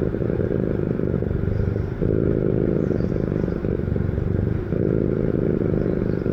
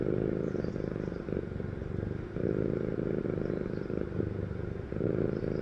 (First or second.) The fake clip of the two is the first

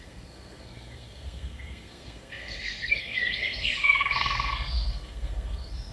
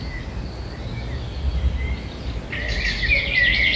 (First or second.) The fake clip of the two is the first